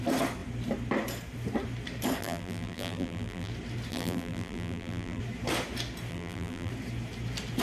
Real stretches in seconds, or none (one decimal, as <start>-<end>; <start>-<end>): 0.0-2.2; 3.5-3.9; 5.2-6.1; 6.7-7.6